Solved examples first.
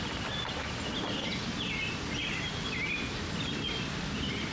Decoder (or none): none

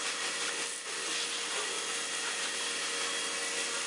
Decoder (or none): none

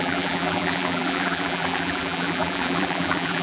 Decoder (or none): vocoder, BigVGAN v2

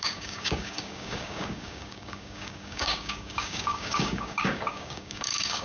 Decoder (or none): codec, DAC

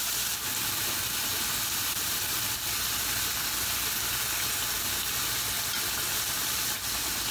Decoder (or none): none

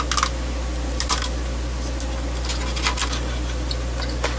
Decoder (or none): none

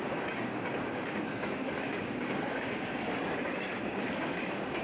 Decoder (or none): codec, DAC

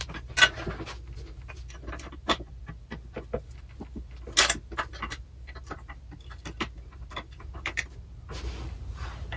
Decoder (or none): none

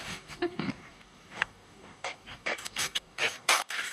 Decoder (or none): codec, DAC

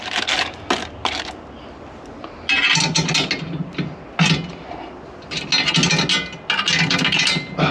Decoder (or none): none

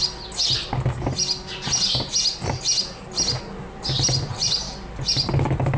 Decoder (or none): none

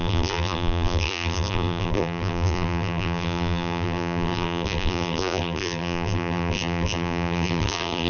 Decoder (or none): vocoder, BigVGAN v2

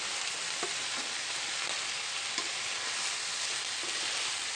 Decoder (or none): none